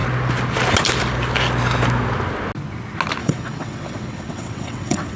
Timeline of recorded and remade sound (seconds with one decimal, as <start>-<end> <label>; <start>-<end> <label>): 0.0-3.2 recorded; 3.2-5.2 remade